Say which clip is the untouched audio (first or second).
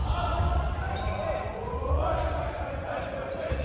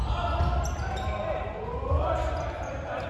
second